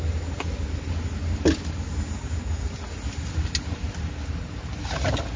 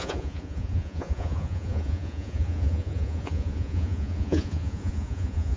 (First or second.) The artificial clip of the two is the second